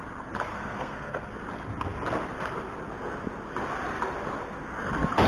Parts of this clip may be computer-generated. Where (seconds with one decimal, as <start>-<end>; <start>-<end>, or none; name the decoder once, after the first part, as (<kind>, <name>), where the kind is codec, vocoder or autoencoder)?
0.5-1.3 (codec, SNAC)